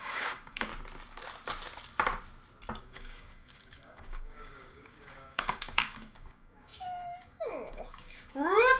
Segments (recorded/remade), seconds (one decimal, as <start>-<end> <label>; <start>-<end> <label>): 0.0-0.7 remade; 0.7-2.8 recorded; 2.8-8.8 remade